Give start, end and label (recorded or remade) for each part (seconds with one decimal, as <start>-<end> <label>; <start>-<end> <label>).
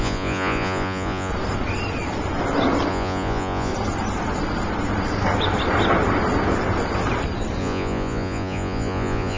0.0-1.3 remade; 1.3-2.9 recorded; 2.9-3.7 remade; 3.7-7.6 recorded; 7.6-9.4 remade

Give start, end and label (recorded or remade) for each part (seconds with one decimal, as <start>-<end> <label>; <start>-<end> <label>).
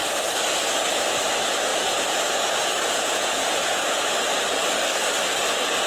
0.0-1.7 recorded; 1.7-4.0 remade; 4.0-5.9 recorded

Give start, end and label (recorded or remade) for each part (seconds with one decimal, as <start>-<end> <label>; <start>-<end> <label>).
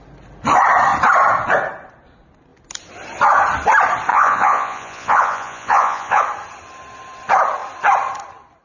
0.0-4.1 recorded; 4.1-6.2 remade; 6.2-8.6 recorded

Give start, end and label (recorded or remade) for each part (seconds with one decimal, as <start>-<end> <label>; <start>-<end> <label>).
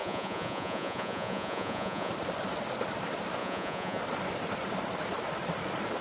0.0-2.1 remade; 2.1-3.4 recorded; 3.4-4.0 remade; 4.0-6.0 recorded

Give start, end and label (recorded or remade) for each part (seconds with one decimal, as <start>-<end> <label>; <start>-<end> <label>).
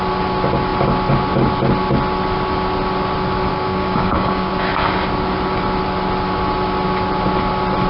0.0-3.5 recorded; 3.5-4.5 remade; 4.5-7.9 recorded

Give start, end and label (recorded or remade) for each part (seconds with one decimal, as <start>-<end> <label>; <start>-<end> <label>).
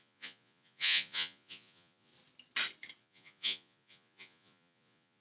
0.0-2.1 remade; 2.1-3.0 recorded; 3.0-5.2 remade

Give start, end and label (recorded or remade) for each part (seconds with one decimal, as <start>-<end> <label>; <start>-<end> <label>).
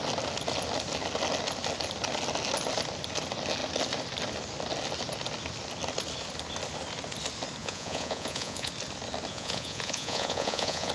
0.0-7.6 recorded; 7.6-8.7 remade; 8.7-9.3 recorded; 9.3-10.9 remade